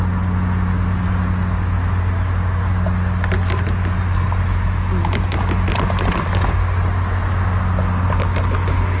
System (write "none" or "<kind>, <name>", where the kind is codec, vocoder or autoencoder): none